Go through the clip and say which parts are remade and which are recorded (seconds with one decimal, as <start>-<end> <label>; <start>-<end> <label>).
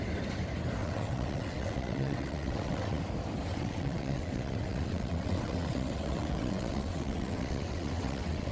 0.0-0.8 recorded; 0.8-3.0 remade; 3.0-3.5 recorded; 3.5-8.5 remade